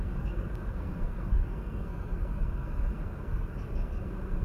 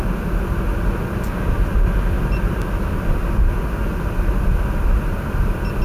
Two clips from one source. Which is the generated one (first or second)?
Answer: first